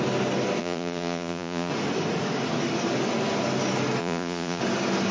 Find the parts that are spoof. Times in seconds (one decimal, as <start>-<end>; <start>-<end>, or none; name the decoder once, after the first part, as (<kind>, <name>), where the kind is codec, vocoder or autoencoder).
0.6-1.7 (vocoder, Vocos); 4.0-4.6